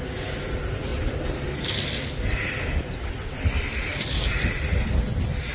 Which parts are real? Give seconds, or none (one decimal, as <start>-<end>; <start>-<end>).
0.0-3.9; 4.9-5.5